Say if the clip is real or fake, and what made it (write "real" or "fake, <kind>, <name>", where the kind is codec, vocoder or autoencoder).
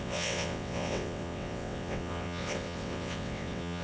fake, vocoder, WaveNeXt